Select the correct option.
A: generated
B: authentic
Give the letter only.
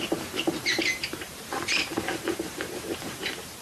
A